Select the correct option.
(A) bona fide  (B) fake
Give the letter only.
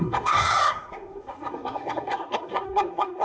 B